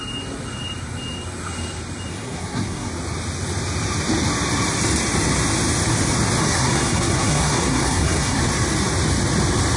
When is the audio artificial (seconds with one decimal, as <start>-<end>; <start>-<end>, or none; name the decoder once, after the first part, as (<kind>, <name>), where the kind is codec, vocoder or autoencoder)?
2.1-2.9 (codec, SNAC); 6.4-8.4